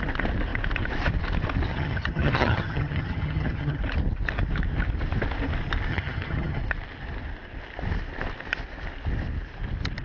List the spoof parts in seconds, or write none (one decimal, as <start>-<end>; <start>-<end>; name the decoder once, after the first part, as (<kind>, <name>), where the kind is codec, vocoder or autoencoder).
1.7-3.8 (vocoder, HiFi-GAN); 5.9-6.6